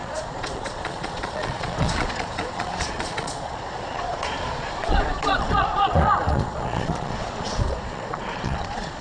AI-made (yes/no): yes